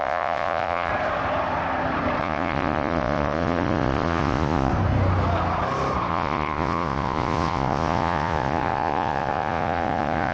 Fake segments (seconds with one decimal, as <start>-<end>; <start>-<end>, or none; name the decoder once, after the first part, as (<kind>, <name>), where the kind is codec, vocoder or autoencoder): 0.0-0.9 (vocoder, Vocos); 2.2-4.7; 6.1-10.3